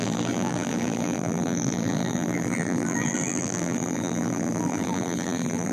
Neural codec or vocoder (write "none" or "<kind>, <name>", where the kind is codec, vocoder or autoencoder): vocoder, BigVGAN v2